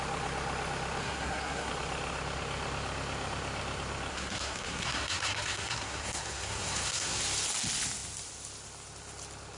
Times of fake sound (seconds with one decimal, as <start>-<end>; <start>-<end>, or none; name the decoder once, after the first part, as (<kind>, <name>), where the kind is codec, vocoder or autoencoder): 1.0-1.7 (codec, SNAC); 4.1-7.2